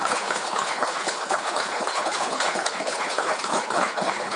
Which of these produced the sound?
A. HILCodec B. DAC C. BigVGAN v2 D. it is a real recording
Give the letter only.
A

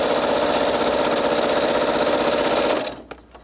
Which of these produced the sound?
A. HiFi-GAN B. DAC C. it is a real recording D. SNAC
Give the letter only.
C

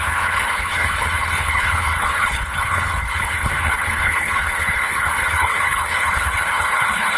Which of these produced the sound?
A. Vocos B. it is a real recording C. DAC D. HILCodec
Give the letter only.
D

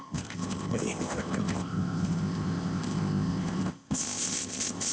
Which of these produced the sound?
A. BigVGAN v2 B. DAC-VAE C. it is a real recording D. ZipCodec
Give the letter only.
D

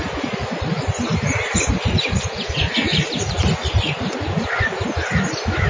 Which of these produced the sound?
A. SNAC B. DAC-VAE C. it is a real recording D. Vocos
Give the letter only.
C